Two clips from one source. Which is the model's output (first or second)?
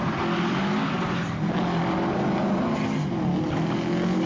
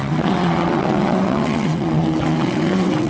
second